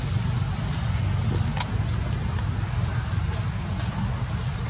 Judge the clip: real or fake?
real